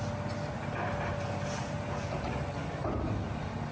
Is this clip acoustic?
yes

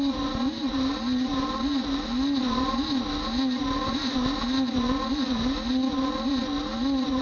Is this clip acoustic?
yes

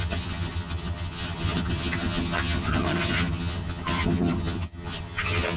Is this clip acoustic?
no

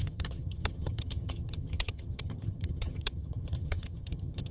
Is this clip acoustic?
no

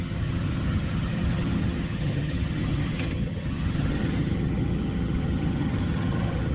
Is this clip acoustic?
no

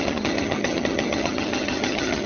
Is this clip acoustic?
no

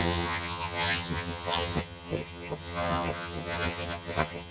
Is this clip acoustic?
no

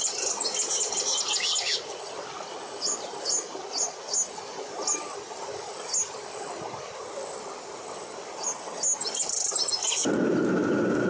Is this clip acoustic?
yes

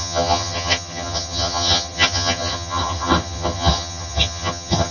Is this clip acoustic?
no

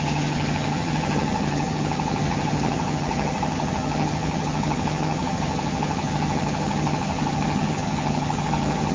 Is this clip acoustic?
no